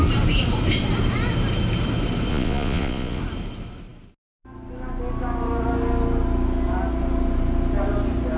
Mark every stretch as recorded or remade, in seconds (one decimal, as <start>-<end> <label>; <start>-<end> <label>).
0.0-2.3 recorded; 2.3-3.2 remade; 3.2-8.4 recorded